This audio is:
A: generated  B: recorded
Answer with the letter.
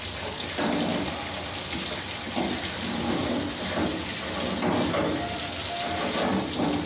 B